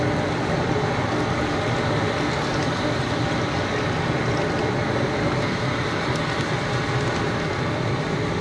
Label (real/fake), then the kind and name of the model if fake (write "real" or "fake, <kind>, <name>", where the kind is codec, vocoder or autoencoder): real